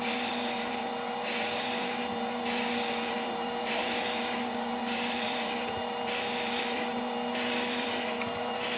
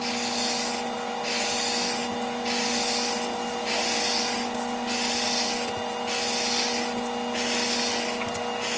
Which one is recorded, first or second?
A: second